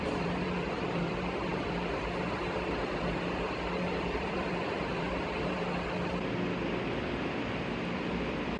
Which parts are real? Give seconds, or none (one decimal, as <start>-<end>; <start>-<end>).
none